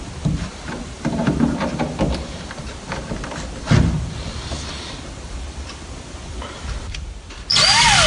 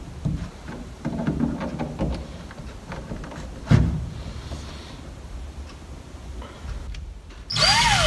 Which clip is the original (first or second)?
second